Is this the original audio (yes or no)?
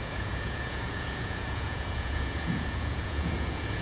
no